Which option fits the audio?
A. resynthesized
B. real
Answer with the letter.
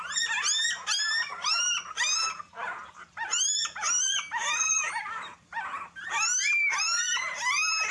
B